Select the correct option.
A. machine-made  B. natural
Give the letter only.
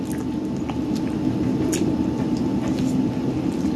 B